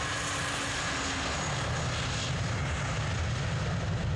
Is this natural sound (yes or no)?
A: yes